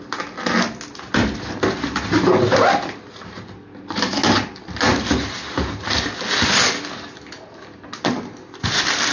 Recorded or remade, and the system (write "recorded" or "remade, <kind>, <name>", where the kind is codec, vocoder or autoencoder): recorded